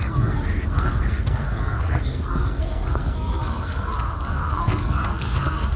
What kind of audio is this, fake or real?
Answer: fake